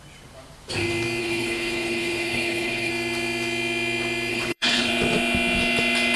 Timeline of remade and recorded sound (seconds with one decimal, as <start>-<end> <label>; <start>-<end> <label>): 0.0-1.2 recorded; 1.2-2.9 remade; 2.9-4.3 recorded; 4.3-4.9 remade; 4.9-6.2 recorded